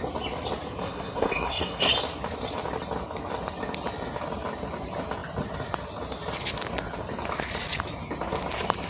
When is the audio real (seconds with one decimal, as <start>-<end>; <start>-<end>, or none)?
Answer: 0.0-0.8; 1.9-8.9